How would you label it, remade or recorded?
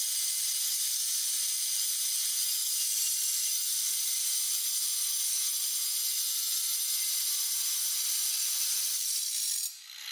recorded